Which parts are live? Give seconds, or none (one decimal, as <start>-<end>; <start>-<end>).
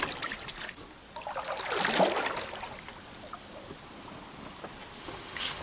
0.0-5.0